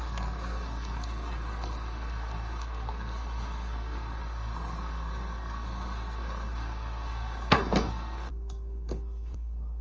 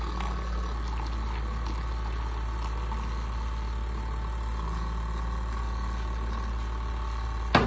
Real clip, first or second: second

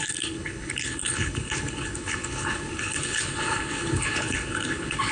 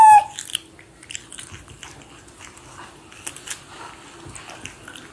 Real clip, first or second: second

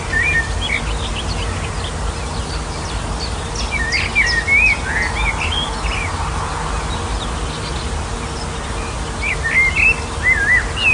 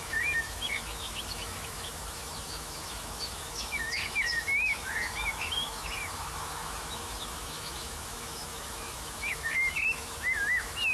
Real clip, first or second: first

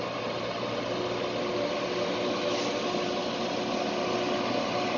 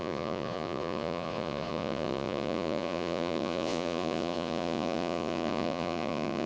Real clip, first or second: first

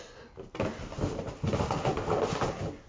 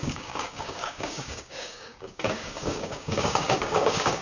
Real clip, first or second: first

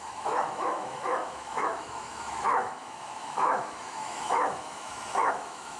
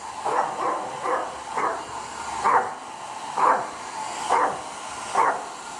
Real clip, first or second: second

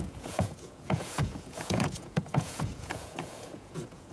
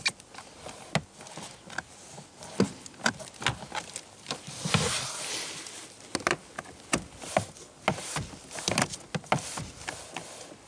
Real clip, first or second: second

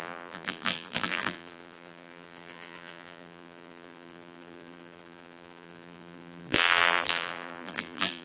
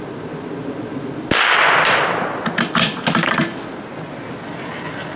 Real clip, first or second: second